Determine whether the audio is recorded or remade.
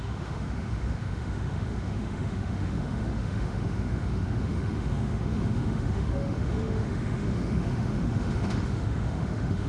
remade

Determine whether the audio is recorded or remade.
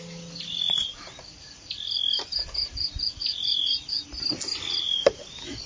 recorded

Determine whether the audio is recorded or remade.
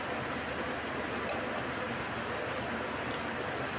recorded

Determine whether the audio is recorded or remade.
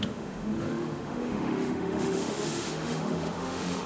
remade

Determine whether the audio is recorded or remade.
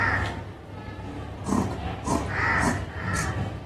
recorded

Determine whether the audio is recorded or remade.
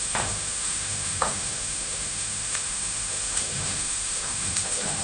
remade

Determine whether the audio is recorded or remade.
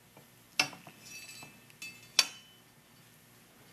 recorded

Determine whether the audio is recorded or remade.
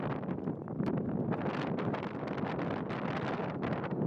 recorded